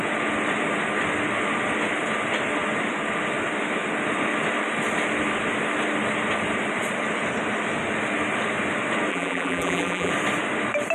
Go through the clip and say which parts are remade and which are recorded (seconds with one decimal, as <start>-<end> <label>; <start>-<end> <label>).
0.0-9.1 recorded; 9.1-10.1 remade; 10.1-10.9 recorded